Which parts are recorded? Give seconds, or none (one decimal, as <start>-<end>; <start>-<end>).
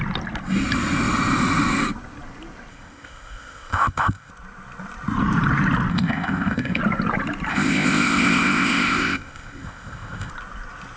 0.0-2.7; 4.3-5.9; 6.8-7.5; 10.3-11.0